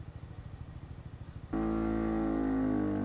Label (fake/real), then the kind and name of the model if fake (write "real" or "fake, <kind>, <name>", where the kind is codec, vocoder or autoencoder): real